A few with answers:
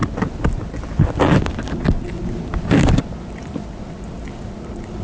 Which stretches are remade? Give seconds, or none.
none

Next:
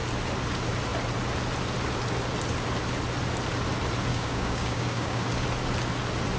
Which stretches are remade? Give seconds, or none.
4.1-5.2